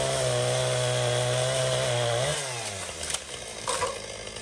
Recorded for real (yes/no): yes